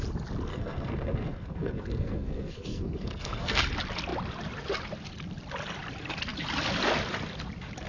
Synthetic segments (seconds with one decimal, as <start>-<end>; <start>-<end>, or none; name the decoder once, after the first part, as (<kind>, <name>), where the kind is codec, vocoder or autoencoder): 0.5-3.6 (codec, SNAC)